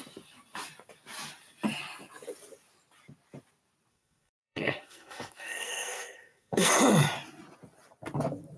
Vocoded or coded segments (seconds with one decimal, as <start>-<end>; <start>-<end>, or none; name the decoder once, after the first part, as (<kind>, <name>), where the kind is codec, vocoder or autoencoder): 3.9-6.7 (codec, SNAC)

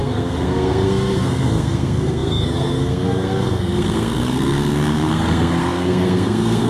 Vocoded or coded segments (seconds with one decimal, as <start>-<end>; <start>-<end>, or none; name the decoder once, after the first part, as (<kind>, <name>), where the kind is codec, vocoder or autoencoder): 0.0-6.7 (codec, SNAC)

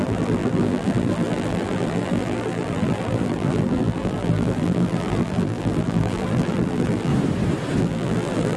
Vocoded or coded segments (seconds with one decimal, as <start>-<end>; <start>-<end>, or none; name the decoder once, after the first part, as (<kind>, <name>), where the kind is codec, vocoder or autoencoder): 0.0-7.1 (vocoder, BigVGAN v2); 7.8-8.6

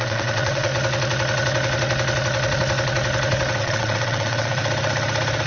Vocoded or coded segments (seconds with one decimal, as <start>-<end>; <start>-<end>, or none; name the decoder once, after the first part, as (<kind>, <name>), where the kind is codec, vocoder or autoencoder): 0.0-0.7 (vocoder, WaveNeXt); 3.6-4.6